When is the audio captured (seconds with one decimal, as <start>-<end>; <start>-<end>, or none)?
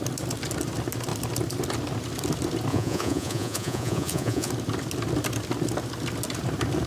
0.0-2.7; 4.5-6.9